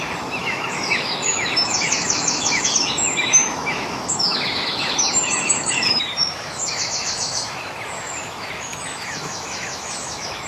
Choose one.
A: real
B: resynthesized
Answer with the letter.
B